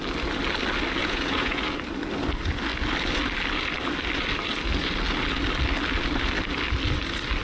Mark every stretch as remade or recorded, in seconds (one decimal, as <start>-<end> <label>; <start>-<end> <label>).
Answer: 0.0-1.0 recorded; 1.0-1.6 remade; 1.6-7.4 recorded